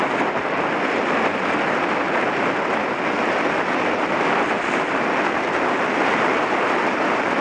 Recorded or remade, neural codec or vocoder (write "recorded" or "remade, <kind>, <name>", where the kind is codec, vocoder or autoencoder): recorded